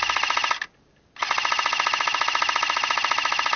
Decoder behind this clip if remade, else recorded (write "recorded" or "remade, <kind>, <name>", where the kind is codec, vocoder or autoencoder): recorded